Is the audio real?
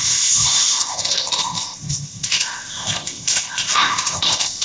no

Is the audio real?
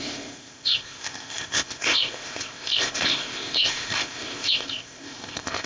no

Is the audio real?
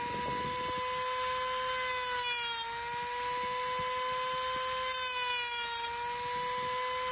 yes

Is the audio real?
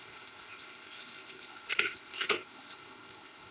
no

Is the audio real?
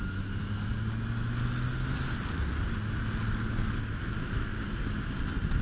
yes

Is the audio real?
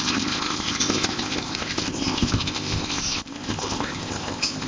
no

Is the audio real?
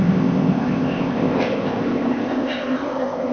no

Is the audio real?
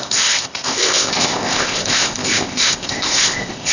no